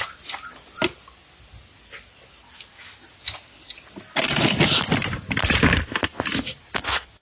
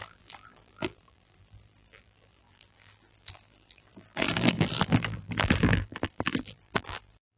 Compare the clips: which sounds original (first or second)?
first